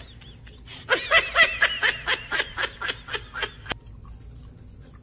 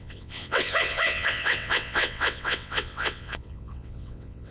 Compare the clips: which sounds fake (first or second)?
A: second